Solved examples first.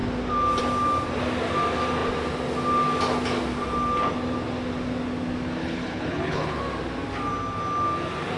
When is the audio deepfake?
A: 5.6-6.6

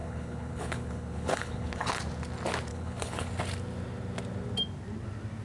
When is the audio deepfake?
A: 0.0-2.0; 2.7-3.3

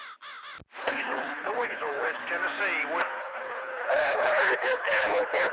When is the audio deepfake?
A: 0.8-2.2; 3.2-5.5